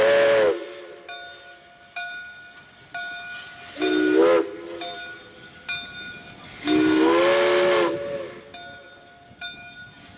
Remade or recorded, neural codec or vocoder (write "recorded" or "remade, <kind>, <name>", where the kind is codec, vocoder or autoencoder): recorded